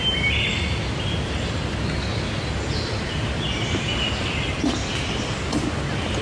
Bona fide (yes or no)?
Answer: yes